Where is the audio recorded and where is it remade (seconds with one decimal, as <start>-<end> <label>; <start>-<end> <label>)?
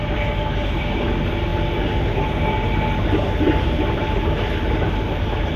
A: 0.0-5.6 recorded